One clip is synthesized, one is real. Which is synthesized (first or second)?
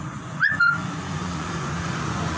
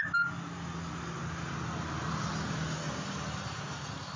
first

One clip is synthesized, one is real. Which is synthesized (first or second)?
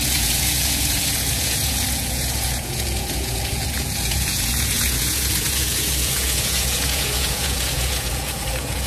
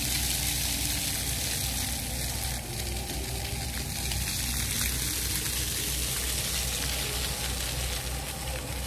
first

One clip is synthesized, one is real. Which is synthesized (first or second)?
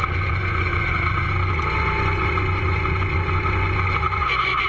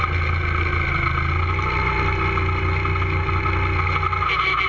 first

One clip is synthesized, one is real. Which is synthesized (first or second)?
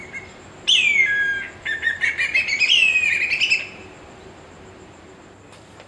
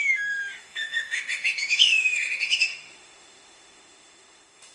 second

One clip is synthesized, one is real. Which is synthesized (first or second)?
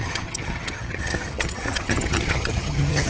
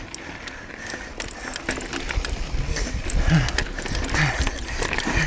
first